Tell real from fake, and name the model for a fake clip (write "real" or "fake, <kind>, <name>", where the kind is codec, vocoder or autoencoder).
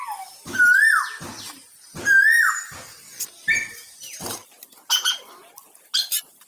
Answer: real